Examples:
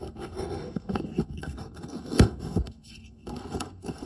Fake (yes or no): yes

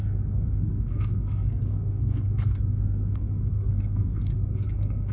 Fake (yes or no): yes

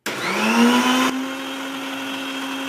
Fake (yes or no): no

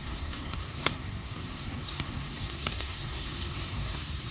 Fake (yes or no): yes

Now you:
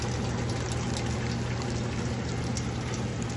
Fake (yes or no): no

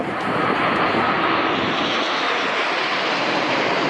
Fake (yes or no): no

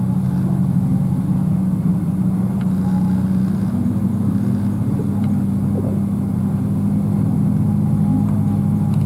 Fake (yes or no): no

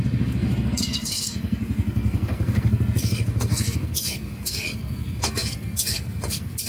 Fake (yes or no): yes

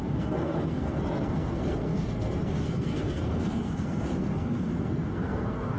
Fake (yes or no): yes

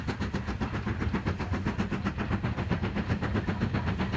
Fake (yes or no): no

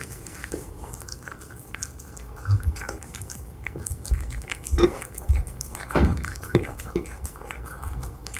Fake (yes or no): yes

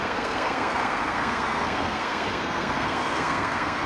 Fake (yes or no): yes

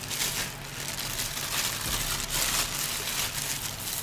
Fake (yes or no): no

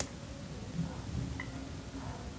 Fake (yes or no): no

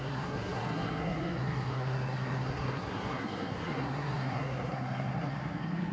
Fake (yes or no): yes